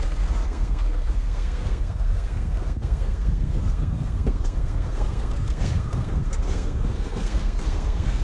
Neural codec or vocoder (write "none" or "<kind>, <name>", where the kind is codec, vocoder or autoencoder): codec, SNAC